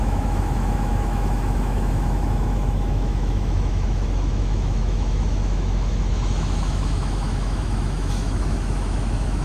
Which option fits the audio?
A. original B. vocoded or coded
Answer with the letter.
B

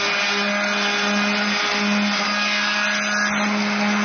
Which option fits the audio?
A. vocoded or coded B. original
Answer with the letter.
B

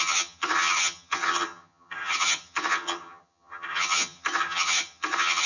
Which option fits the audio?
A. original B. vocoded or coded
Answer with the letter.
B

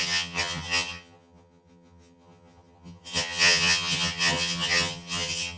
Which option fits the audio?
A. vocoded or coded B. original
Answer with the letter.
A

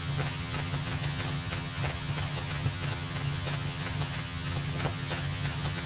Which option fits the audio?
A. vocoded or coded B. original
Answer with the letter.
A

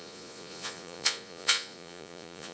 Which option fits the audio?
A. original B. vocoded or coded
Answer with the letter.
B